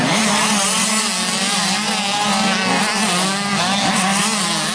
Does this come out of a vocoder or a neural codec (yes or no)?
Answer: no